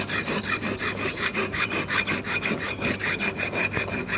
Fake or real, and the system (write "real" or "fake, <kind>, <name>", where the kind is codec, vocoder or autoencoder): real